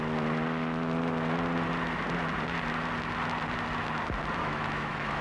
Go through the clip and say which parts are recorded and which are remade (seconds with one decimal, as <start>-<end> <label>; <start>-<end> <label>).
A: 0.0-4.4 recorded; 4.4-5.2 remade